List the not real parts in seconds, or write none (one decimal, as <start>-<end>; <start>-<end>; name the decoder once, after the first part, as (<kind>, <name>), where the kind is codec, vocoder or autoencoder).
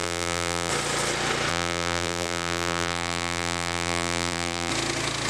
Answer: 0.0-0.7 (vocoder, BigVGAN v2); 1.5-4.7